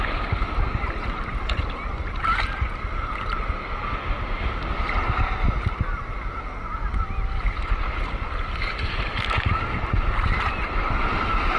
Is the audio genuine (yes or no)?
yes